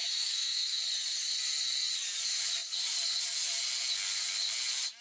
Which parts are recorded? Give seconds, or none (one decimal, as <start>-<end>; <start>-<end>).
0.8-5.0